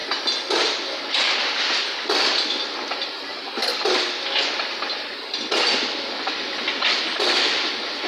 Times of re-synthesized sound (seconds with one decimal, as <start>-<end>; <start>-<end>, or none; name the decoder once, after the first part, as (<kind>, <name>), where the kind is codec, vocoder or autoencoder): none